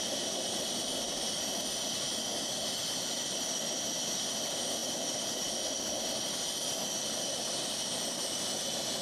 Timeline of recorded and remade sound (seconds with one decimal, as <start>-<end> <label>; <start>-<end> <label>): 0.0-9.0 recorded

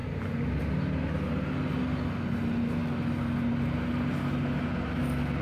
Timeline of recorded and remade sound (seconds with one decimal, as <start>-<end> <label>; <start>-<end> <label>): 0.0-0.6 remade; 0.6-2.8 recorded; 2.8-3.5 remade; 3.5-5.4 recorded

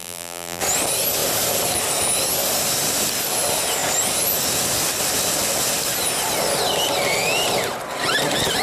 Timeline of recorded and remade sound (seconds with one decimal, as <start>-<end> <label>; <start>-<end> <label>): 0.0-0.6 remade; 0.6-8.6 recorded